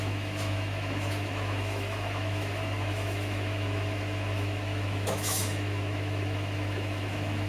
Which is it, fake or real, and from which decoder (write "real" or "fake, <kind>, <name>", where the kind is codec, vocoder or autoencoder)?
fake, autoencoder, DAC-VAE